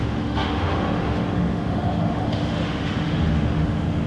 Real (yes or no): no